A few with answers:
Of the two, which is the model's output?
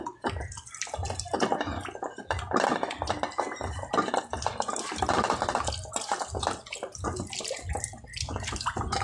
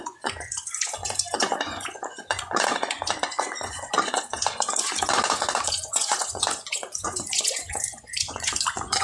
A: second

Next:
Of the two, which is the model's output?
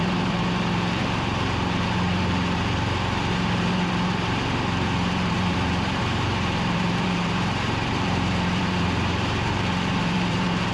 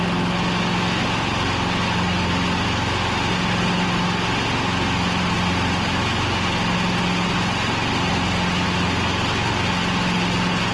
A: first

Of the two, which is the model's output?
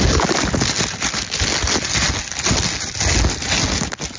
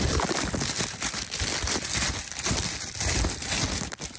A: second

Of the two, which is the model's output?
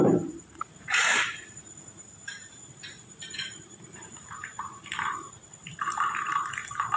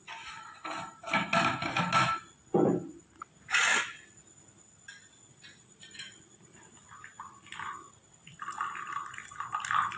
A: first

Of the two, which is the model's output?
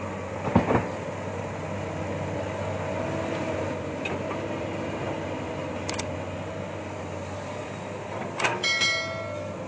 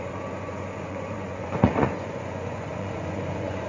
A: second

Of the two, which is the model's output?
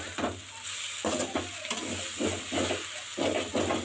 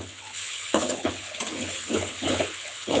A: second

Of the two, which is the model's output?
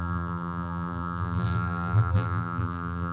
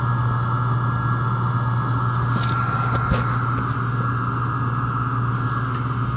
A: first